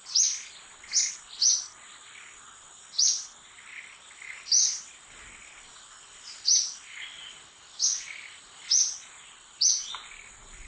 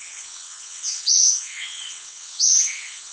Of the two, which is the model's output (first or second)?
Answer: second